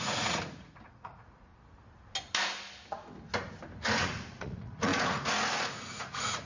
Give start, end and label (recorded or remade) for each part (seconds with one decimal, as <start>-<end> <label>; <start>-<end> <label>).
0.0-1.5 remade; 1.5-3.8 recorded; 3.8-6.5 remade